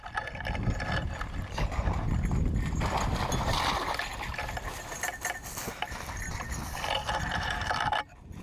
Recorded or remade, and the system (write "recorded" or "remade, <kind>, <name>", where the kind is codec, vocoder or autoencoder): recorded